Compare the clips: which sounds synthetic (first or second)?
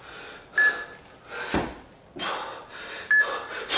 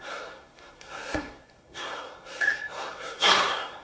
second